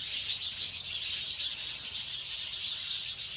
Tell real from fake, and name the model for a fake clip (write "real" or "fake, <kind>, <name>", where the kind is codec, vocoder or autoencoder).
real